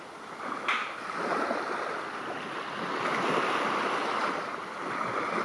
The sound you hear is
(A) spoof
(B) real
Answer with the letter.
B